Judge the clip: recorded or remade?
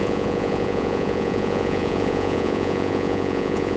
remade